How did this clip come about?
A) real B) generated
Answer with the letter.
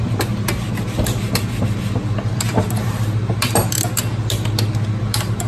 A